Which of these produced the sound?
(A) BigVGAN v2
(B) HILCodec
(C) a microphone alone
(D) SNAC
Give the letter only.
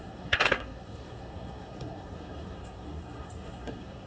D